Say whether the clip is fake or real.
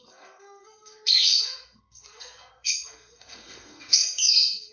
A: fake